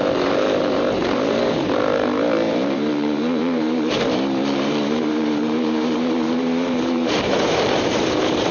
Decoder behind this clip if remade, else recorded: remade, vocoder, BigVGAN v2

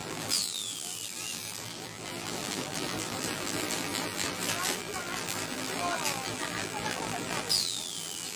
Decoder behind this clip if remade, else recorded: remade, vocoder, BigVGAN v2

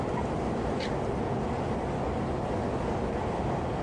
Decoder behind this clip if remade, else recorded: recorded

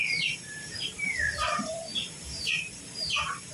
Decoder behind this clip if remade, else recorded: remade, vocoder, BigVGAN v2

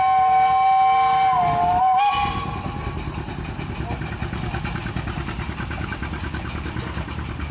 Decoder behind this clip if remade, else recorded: recorded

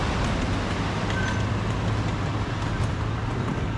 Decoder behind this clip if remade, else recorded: recorded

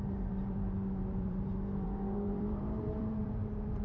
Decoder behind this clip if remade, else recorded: remade, vocoder, BigVGAN v2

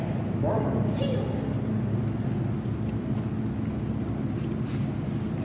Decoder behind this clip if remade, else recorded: recorded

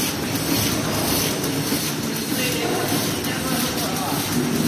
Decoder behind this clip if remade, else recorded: recorded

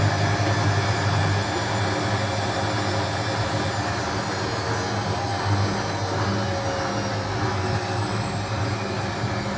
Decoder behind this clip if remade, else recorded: recorded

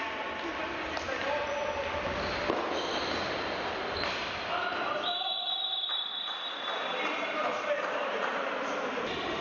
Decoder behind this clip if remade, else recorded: remade, vocoder, BigVGAN v2